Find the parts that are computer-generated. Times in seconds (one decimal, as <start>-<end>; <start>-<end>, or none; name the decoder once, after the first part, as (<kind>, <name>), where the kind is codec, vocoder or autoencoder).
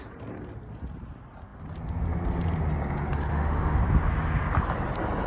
3.3-3.8 (autoencoder, DAC-VAE)